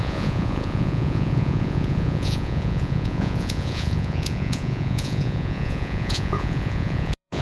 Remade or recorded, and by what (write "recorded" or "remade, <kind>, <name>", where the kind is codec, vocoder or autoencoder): remade, vocoder, Vocos